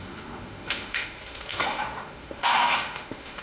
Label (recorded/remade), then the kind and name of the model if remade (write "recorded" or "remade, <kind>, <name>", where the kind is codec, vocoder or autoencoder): remade, autoencoder, DAC-VAE